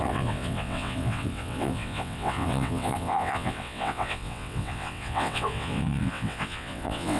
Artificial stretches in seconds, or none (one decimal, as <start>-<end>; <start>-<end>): 0.0-7.2